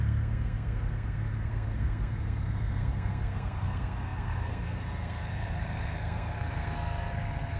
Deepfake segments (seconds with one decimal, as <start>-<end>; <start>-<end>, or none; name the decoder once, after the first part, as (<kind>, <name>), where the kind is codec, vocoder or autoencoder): 0.0-7.6 (codec, SNAC)